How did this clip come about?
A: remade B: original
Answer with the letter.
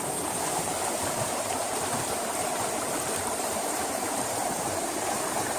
A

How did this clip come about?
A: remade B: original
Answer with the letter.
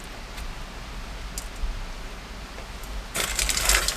B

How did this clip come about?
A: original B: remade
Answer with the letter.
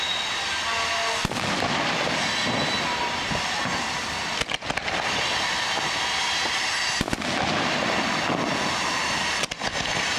A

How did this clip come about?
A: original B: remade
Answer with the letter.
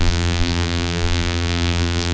B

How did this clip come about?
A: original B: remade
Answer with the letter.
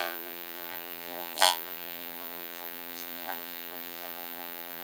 B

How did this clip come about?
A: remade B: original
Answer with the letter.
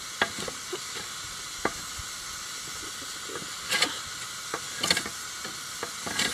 B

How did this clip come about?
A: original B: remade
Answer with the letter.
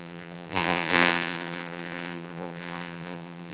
B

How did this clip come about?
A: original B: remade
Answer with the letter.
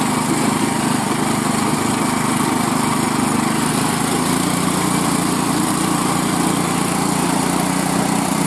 A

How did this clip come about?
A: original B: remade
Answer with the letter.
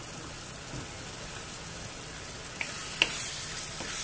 A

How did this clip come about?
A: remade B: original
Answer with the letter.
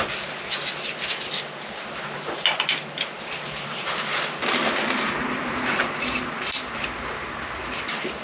B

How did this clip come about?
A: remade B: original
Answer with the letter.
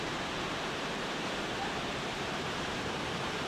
A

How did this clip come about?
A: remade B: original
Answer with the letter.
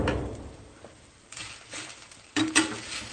B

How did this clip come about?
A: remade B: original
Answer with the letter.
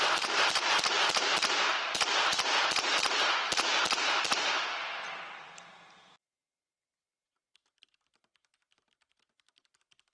A